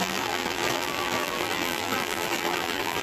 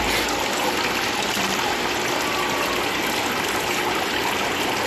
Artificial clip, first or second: first